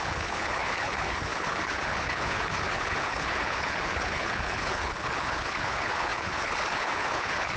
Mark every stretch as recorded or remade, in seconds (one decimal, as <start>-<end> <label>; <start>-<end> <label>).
0.0-7.6 remade

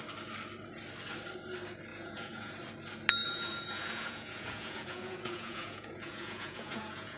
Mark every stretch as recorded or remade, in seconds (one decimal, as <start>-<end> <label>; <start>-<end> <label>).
0.0-1.9 recorded; 1.9-2.5 remade; 2.5-3.2 recorded; 3.2-7.2 remade

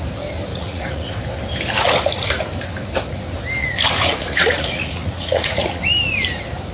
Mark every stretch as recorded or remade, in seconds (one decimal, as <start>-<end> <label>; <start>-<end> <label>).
0.0-0.5 recorded; 0.5-1.1 remade; 1.1-3.6 recorded; 3.6-5.8 remade; 5.8-6.7 recorded

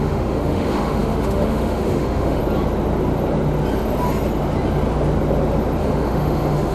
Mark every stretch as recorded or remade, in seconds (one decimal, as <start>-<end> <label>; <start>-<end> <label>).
0.0-2.4 remade; 2.4-5.8 recorded; 5.8-6.7 remade

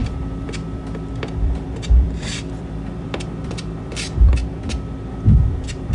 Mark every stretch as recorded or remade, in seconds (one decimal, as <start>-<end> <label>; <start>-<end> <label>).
0.0-4.4 remade; 4.4-5.1 recorded; 5.1-5.9 remade